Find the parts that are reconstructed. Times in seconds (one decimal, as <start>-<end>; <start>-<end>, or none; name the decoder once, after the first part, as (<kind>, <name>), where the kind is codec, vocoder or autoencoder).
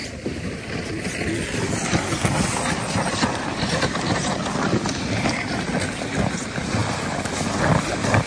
none